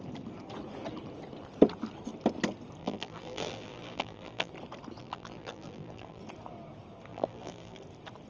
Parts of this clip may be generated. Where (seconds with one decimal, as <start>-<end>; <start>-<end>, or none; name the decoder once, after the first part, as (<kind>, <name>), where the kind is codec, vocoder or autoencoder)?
2.8-4.5 (vocoder, BigVGAN v2); 5.0-6.2; 7.1-7.8